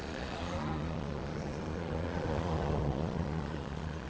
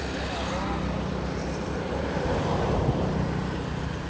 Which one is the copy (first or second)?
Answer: first